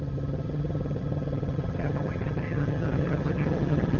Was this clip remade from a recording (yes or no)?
yes